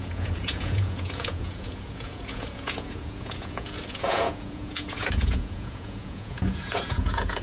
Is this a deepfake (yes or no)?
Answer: yes